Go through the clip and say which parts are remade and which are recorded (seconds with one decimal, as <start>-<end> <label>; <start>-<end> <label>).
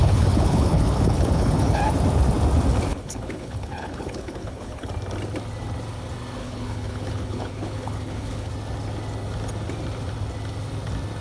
0.0-1.8 remade; 1.8-2.9 recorded; 2.9-4.9 remade; 4.9-6.4 recorded; 6.4-8.5 remade; 8.5-11.2 recorded